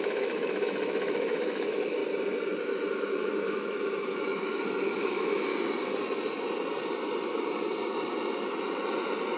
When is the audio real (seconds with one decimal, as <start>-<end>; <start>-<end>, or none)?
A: 2.0-2.6; 5.5-9.4